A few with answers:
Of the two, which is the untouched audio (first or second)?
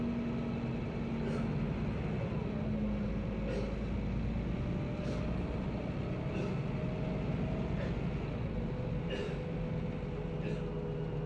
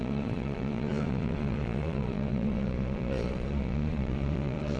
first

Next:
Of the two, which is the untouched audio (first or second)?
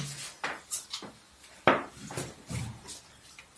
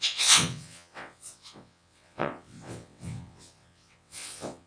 first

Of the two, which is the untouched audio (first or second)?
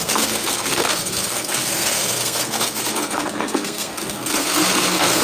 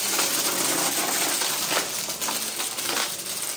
second